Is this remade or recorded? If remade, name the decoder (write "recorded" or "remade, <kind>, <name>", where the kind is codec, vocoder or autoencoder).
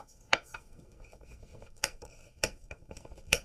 remade, codec, SNAC